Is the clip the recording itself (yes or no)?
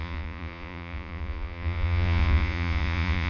no